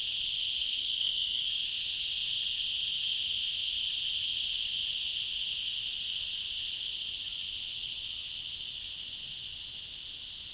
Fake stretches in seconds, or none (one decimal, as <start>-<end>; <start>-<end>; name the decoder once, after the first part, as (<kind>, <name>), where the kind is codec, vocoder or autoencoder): 0.6-1.4 (codec, SNAC)